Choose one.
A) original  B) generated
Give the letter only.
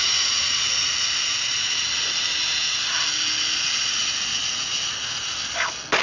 A